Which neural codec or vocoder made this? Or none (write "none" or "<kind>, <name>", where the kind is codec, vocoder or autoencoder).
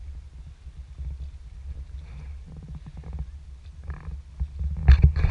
none